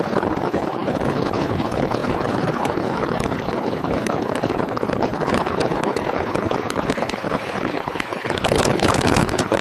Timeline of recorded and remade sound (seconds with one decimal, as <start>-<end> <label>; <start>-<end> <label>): 0.0-9.6 remade